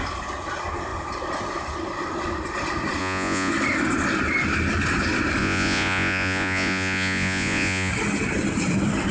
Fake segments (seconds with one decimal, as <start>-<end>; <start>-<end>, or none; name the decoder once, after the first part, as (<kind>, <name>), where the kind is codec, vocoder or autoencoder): 3.0-3.5 (vocoder, Vocos); 5.4-7.9